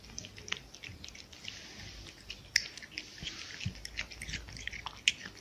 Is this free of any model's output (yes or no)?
yes